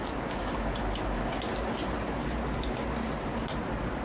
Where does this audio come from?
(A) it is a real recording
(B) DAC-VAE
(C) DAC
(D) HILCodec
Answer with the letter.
A